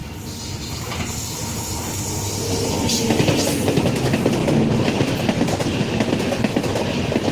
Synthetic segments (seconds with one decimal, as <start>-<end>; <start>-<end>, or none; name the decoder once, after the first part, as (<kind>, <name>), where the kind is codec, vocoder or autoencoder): none